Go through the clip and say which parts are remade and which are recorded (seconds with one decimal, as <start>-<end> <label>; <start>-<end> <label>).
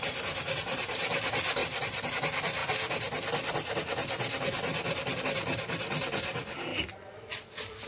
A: 0.0-1.6 recorded; 1.6-2.1 remade; 2.1-7.9 recorded